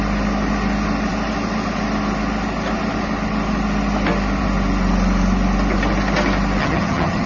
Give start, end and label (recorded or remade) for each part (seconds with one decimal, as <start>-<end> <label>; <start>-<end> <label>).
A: 0.0-6.6 recorded; 6.6-7.3 remade